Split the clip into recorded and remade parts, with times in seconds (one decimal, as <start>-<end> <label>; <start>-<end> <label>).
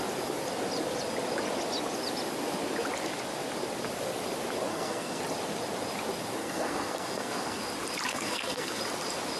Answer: 0.0-4.7 recorded; 4.7-5.2 remade; 5.2-6.4 recorded; 6.4-7.6 remade; 7.6-8.1 recorded; 8.1-8.8 remade; 8.8-9.4 recorded